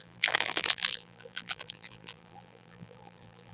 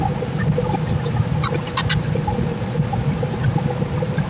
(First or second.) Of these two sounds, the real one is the second